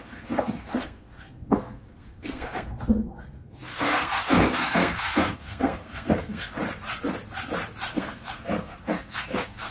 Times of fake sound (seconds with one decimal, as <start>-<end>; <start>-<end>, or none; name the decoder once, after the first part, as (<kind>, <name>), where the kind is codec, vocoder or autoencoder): 0.0-6.6 (codec, SNAC); 7.9-9.7